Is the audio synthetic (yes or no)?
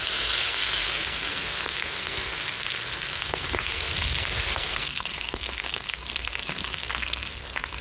yes